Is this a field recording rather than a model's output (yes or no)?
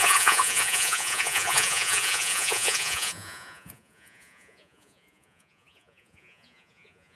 no